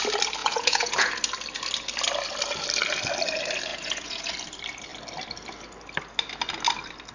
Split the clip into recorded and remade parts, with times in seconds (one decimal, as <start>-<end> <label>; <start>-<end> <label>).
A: 0.0-0.4 recorded; 0.4-1.1 remade; 1.1-3.7 recorded; 3.7-4.3 remade; 4.3-7.1 recorded